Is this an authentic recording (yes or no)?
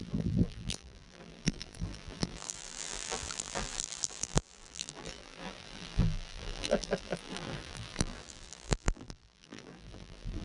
no